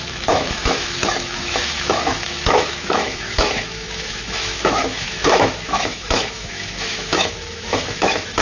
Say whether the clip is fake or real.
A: fake